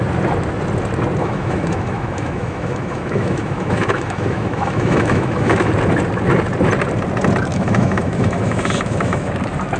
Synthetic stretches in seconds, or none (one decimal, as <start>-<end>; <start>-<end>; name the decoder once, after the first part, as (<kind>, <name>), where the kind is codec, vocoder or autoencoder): 1.2-5.7 (autoencoder, DAC-VAE); 7.5-9.3